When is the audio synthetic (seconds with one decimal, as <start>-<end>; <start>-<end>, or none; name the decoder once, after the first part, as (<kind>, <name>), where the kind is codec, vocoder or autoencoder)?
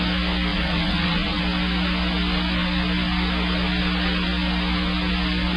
0.5-1.4 (vocoder, WaveNeXt)